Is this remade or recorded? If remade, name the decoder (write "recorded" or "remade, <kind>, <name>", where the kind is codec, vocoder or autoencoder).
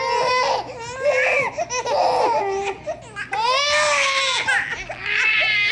recorded